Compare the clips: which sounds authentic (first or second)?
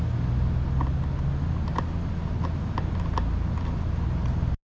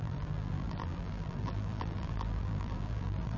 first